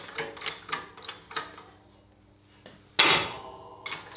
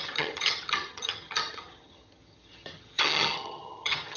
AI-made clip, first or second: second